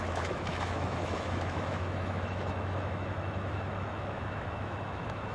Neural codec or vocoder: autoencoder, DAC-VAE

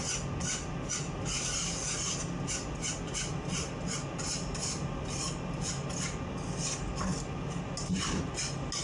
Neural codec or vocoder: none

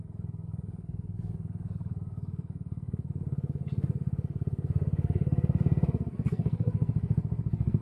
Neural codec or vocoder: codec, SNAC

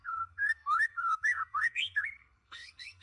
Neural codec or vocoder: codec, SNAC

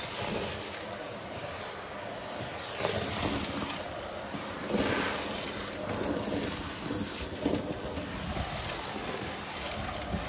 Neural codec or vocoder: none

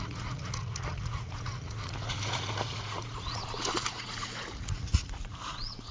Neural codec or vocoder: vocoder, Vocos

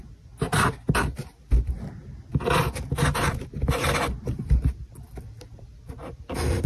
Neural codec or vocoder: none